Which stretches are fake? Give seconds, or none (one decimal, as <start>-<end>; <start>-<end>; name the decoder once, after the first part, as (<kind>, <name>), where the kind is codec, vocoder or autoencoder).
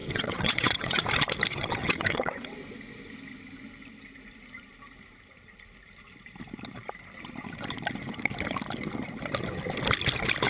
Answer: 0.0-1.0 (vocoder, WaveNeXt); 1.5-2.6